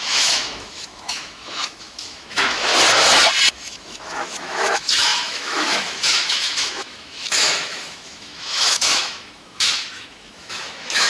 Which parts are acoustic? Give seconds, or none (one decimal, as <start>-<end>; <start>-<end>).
2.7-3.5